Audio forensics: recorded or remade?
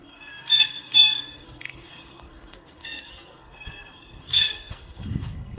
remade